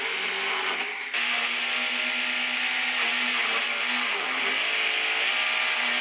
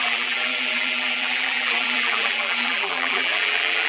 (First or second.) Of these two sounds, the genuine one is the first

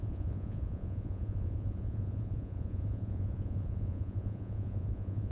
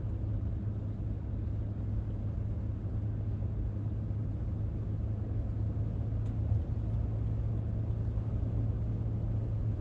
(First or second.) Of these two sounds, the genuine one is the second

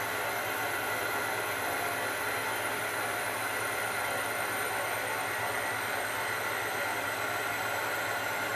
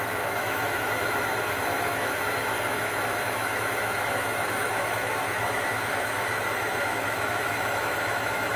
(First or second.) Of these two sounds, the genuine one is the first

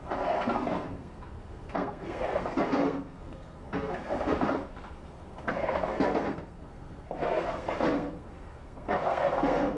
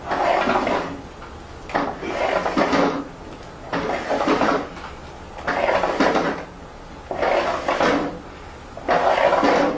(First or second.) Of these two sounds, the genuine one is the second